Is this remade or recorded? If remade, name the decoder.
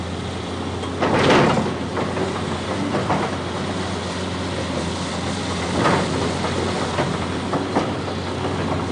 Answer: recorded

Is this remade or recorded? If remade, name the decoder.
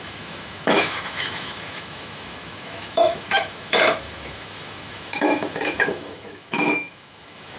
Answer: remade, autoencoder, DAC-VAE